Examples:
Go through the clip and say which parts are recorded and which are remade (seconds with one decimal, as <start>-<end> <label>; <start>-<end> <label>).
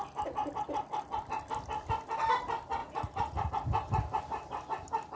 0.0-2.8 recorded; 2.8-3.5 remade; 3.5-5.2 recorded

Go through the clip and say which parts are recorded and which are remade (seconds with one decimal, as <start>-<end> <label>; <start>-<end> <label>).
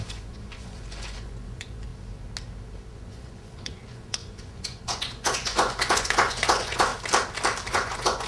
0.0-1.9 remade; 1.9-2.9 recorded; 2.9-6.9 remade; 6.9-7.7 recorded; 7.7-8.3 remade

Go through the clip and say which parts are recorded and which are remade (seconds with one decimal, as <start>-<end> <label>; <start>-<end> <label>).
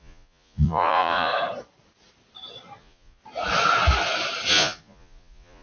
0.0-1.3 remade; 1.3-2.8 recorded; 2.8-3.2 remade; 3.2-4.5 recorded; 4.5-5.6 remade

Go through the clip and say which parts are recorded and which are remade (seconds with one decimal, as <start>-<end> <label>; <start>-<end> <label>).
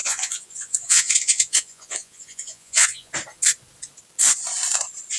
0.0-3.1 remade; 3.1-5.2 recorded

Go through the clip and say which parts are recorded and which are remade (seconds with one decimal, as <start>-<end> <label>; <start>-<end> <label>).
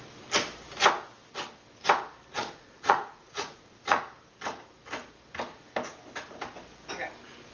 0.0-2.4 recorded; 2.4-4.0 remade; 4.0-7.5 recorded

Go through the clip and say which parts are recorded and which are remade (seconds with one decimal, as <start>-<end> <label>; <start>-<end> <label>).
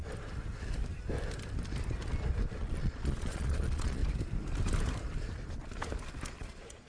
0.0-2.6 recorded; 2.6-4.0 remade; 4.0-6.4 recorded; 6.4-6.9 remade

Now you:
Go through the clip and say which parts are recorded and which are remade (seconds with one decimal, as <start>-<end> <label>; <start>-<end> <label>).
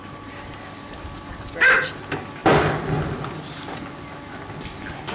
0.0-5.1 recorded